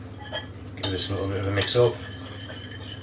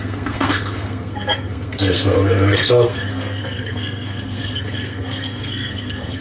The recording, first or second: first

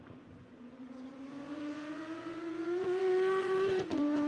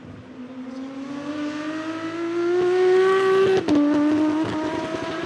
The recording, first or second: second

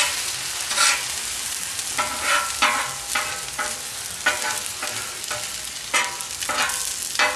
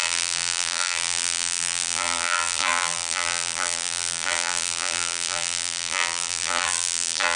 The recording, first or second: first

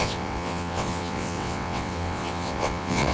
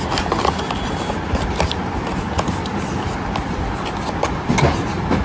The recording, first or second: second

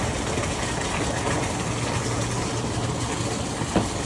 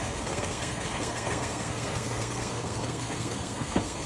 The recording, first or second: first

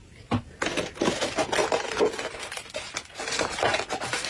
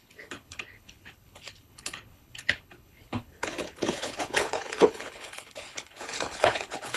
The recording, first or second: first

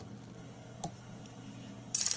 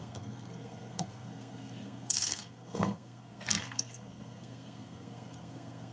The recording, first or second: first